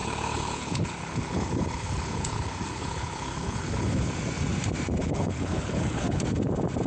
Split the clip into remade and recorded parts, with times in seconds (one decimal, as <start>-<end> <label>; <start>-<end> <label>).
0.0-4.1 remade; 4.1-5.0 recorded; 5.0-6.2 remade; 6.2-6.9 recorded